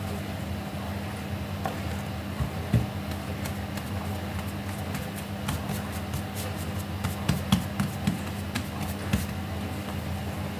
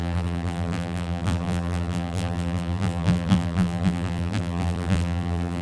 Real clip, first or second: first